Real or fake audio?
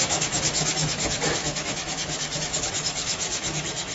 fake